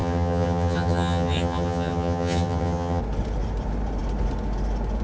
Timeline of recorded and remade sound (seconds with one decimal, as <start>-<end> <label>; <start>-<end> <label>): 0.0-3.0 remade; 3.0-5.0 recorded